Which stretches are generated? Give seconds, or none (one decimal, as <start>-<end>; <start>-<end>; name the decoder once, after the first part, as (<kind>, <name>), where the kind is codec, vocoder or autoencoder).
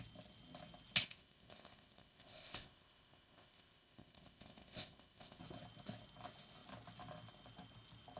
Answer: 1.0-5.4 (codec, ZipCodec)